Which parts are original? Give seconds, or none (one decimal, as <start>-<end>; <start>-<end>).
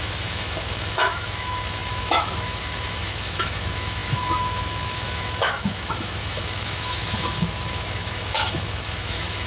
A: none